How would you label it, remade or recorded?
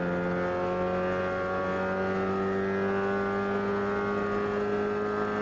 recorded